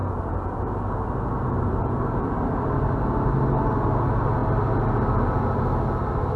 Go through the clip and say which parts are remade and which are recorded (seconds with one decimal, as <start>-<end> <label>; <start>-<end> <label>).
0.0-6.4 recorded